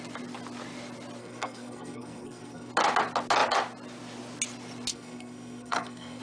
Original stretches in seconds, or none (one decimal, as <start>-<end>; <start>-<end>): 0.0-1.2; 2.7-4.9